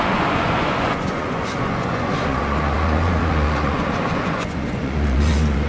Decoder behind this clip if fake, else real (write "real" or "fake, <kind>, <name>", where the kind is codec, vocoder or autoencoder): fake, vocoder, Vocos